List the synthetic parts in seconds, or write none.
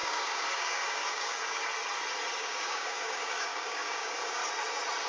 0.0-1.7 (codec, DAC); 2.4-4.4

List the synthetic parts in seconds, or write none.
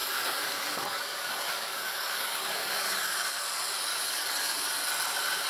0.0-3.3 (codec, DAC); 3.9-4.7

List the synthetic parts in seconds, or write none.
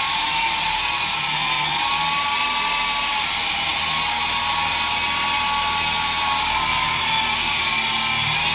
none